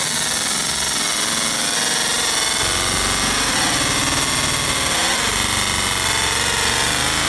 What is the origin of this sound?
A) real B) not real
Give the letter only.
A